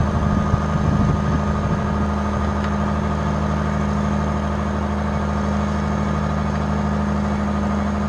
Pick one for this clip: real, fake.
real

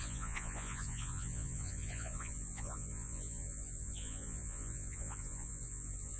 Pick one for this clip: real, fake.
fake